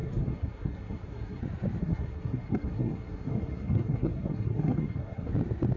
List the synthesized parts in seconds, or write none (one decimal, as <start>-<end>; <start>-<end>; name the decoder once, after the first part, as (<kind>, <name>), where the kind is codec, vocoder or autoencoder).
0.0-1.4 (codec, SNAC); 1.8-5.3